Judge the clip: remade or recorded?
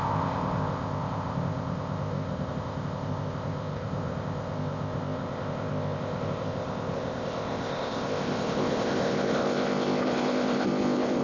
remade